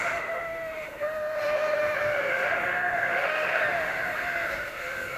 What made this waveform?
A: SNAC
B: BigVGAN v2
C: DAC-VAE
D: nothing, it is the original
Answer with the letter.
C